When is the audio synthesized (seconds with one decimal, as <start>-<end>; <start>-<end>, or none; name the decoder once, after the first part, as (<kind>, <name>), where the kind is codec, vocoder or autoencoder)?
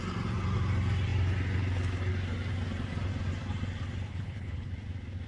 4.1-4.7 (codec, HILCodec)